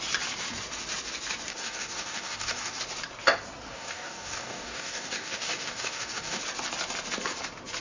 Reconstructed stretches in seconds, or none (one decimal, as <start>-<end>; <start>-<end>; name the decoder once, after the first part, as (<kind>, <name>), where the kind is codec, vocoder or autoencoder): 1.5-2.8 (codec, DAC); 3.7-6.4